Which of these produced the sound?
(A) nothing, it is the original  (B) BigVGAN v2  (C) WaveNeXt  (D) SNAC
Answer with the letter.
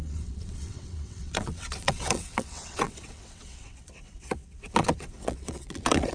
C